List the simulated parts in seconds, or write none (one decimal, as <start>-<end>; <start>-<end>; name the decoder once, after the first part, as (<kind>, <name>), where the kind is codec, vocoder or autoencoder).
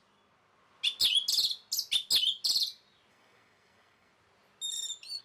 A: 3.1-4.1 (codec, SNAC)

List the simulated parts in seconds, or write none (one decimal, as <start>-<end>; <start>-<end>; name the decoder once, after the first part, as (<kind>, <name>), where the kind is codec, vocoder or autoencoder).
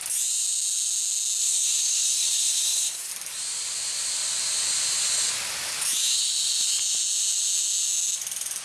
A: 1.4-3.1 (codec, SNAC)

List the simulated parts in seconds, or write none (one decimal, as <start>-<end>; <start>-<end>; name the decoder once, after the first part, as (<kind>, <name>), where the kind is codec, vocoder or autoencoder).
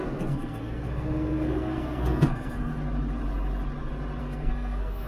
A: 0.0-2.7 (codec, SNAC); 4.2-5.1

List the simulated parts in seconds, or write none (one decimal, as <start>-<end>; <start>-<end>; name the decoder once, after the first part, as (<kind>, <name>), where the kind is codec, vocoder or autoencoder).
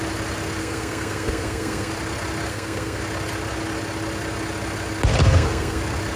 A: 0.6-1.9 (codec, SNAC); 2.5-3.0; 5.2-5.8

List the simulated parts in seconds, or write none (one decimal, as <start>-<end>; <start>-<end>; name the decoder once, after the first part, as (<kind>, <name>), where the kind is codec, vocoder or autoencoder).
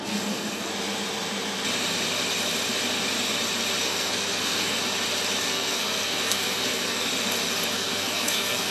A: 0.0-0.7 (codec, SNAC); 3.8-4.8; 5.4-7.1; 7.7-8.7